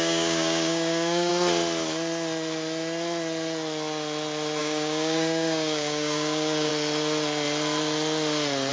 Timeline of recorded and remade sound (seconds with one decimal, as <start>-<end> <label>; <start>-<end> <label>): 0.0-1.3 remade; 1.3-4.6 recorded; 4.6-6.7 remade; 6.7-8.7 recorded

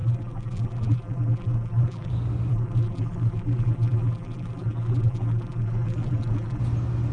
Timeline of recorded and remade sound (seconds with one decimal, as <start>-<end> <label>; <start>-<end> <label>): 0.0-2.1 remade; 2.1-2.5 recorded; 2.5-6.6 remade; 6.6-7.1 recorded

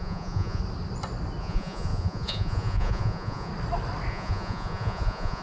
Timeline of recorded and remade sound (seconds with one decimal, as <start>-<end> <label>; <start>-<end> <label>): 0.0-0.6 remade; 0.6-1.4 recorded; 1.4-3.5 remade; 3.5-4.1 recorded; 4.1-5.4 remade

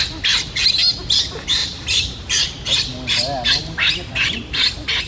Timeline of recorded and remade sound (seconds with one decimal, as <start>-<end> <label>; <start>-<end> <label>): 0.0-1.6 recorded; 1.6-2.1 remade; 2.1-5.1 recorded

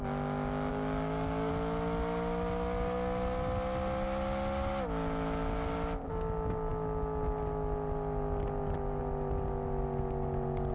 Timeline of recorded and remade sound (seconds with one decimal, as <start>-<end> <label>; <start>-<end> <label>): 0.0-0.7 recorded; 0.7-1.5 remade; 1.5-10.7 recorded

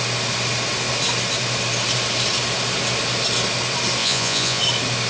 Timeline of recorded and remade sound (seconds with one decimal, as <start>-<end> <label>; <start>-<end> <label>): 0.0-4.0 recorded; 4.0-4.6 remade; 4.6-5.1 recorded

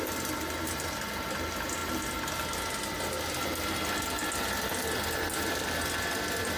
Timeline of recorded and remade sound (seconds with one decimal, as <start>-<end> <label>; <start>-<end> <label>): 0.0-6.6 recorded

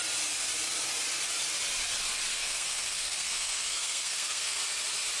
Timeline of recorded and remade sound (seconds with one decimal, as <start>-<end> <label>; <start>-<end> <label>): 0.0-2.3 recorded; 2.3-4.6 remade; 4.6-5.2 recorded